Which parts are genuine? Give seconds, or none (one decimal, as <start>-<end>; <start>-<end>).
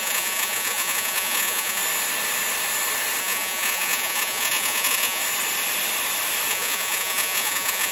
1.8-3.2; 5.2-6.5